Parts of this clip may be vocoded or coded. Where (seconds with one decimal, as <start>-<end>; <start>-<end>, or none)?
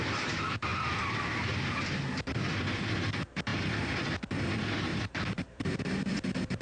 4.9-5.8